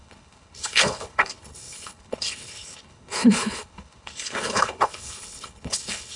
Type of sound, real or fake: fake